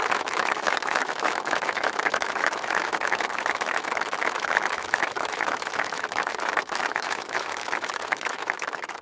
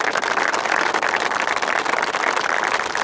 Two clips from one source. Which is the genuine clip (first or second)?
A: second